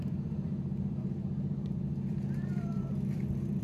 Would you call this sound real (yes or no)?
no